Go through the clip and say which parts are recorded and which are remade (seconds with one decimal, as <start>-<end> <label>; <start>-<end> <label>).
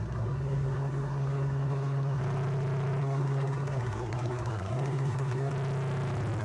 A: 0.0-2.2 remade; 2.2-3.0 recorded; 3.0-5.5 remade; 5.5-6.4 recorded